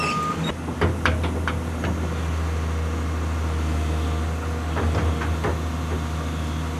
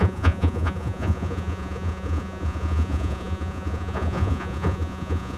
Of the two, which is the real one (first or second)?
first